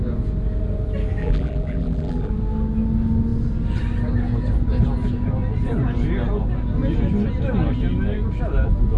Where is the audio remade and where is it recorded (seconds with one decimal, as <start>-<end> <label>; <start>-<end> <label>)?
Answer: 0.0-1.2 recorded; 1.2-2.3 remade; 2.3-9.0 recorded

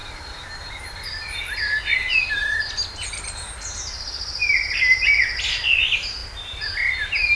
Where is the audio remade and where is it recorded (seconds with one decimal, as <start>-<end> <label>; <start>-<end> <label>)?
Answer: 0.0-2.2 remade; 2.2-3.0 recorded; 3.0-4.7 remade; 4.7-6.2 recorded; 6.2-7.4 remade